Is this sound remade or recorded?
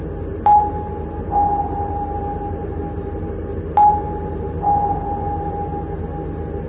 recorded